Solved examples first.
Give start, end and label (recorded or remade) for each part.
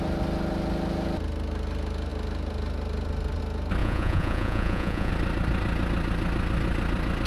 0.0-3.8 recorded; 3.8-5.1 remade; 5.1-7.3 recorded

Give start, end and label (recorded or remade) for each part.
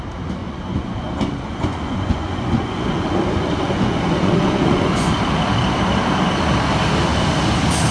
0.0-0.4 recorded; 0.4-5.1 remade; 5.1-7.9 recorded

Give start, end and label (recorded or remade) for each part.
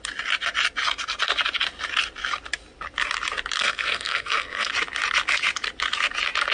0.0-3.6 recorded; 3.6-4.7 remade; 4.7-6.5 recorded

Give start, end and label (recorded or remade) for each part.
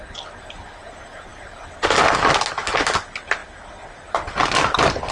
0.0-5.1 recorded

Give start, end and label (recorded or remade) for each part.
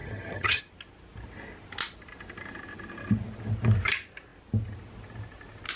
0.0-0.6 remade; 0.6-5.8 recorded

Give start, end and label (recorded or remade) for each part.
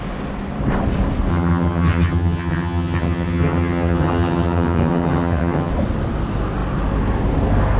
0.0-1.3 recorded; 1.3-5.7 remade; 5.7-7.8 recorded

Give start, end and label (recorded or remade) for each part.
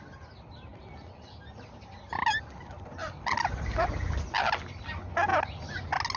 0.0-6.2 recorded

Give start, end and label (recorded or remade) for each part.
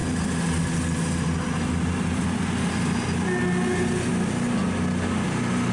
0.0-5.7 recorded